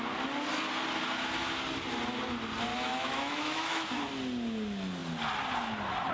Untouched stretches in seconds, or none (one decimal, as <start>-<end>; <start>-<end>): 0.0-2.7; 3.9-6.1